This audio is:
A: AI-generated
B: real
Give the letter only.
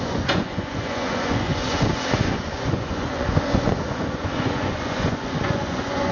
A